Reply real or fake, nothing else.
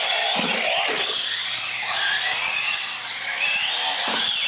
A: real